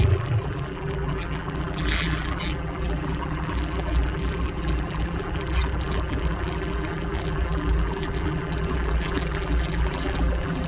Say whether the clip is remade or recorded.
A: remade